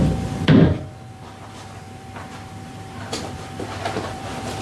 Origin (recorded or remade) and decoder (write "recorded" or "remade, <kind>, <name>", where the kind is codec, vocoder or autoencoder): remade, vocoder, BigVGAN v2